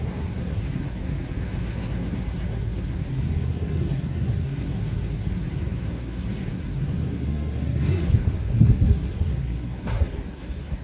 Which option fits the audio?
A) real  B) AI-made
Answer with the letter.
B